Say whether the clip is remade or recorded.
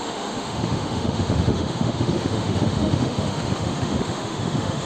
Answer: remade